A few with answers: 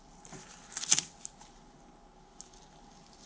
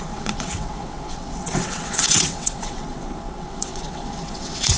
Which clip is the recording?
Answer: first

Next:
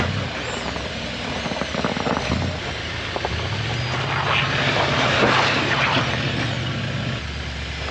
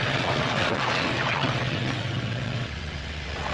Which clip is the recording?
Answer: first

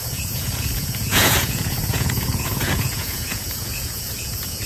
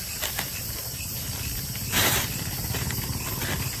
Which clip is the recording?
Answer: second